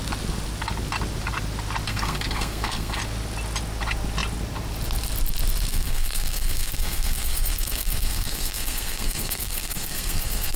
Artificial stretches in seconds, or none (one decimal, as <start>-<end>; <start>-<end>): 1.9-3.0; 5.7-10.6